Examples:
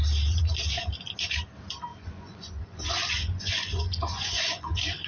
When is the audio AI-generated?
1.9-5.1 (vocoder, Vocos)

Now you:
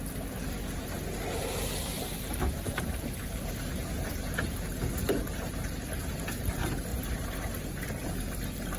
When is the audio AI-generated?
1.9-3.7 (vocoder, BigVGAN v2); 6.9-7.6